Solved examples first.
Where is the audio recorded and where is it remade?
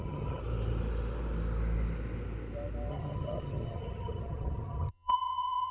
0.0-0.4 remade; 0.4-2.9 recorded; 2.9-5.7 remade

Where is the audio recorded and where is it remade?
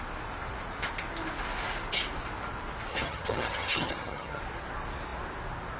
0.0-2.9 recorded; 2.9-4.4 remade; 4.4-5.8 recorded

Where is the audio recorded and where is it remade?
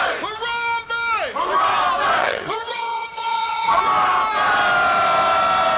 0.0-2.2 recorded; 2.2-3.8 remade; 3.8-5.8 recorded